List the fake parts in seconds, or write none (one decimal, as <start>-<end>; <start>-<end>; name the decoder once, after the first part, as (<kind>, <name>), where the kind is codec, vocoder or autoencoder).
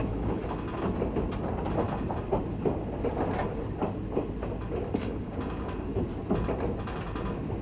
0.0-0.4 (codec, DAC); 5.0-5.9